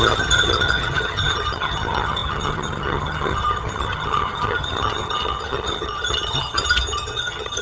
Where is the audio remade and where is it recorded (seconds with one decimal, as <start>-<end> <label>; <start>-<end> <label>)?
0.0-7.6 remade